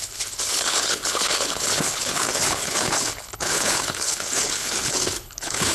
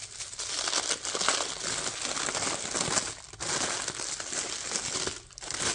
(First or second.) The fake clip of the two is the first